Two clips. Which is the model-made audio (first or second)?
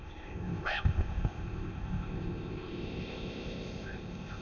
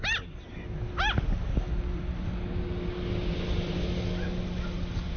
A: first